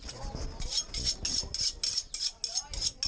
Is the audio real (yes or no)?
yes